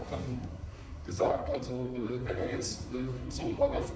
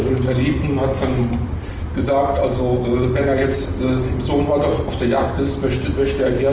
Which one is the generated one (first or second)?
first